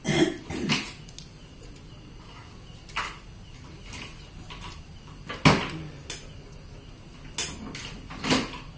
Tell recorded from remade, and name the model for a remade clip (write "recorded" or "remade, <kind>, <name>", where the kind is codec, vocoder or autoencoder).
recorded